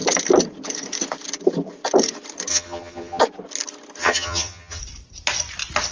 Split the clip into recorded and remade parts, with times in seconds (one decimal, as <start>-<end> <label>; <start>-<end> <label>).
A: 0.0-2.5 recorded; 2.5-3.2 remade; 3.2-4.0 recorded; 4.0-4.8 remade; 4.8-5.9 recorded